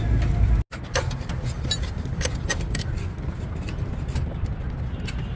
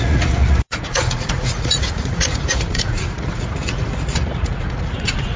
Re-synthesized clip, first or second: second